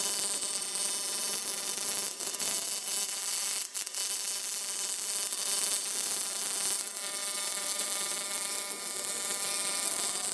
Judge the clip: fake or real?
fake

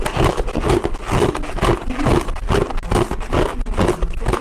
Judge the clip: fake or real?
real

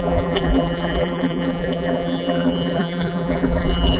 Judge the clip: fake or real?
fake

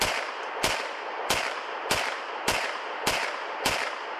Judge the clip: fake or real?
fake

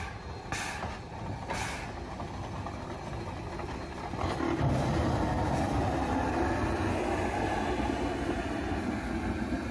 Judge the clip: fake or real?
real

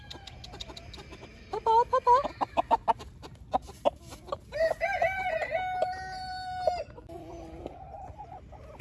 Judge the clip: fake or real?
real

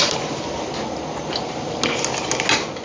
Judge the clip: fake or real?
real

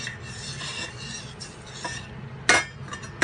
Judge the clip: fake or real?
real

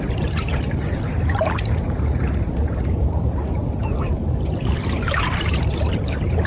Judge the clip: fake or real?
fake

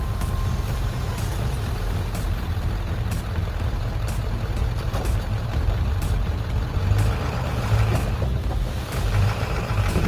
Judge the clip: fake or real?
fake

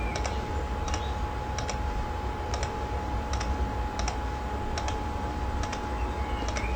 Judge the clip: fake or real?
real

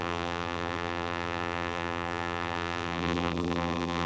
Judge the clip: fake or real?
fake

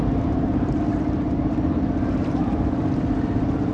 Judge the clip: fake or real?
fake